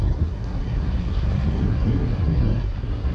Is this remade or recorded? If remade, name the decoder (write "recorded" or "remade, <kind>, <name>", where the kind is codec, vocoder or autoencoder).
remade, codec, SNAC